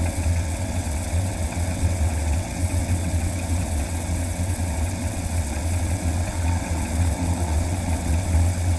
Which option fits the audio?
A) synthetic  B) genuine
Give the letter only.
A